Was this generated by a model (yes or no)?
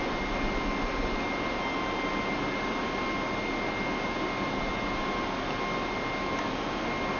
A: no